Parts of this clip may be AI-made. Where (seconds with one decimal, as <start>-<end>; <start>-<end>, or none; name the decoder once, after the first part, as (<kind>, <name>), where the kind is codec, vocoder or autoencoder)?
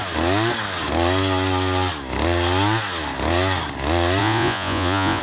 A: 4.2-5.2 (vocoder, Vocos)